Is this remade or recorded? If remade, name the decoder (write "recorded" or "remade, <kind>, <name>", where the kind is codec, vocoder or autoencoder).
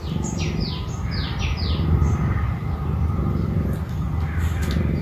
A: recorded